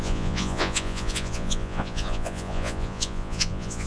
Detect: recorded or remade remade